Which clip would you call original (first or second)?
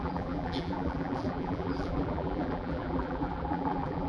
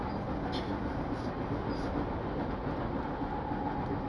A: second